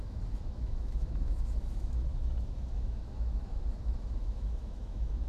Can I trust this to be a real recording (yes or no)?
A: no